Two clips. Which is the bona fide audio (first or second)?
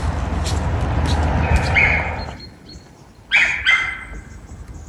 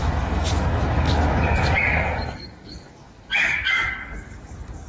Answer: first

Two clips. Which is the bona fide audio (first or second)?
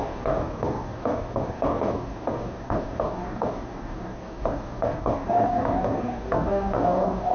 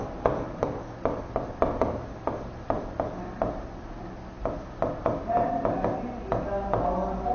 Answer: second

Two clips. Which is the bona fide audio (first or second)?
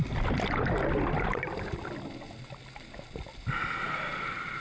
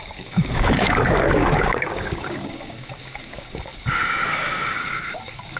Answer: first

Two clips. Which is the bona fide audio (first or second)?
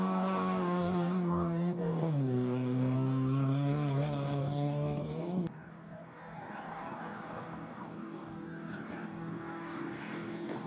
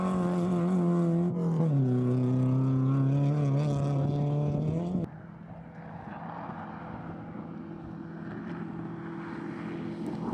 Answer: second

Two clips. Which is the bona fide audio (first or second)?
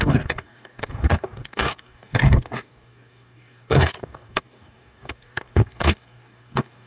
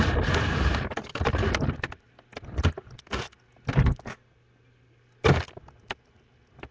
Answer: second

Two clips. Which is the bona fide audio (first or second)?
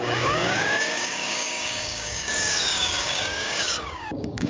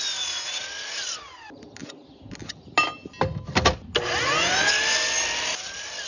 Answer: second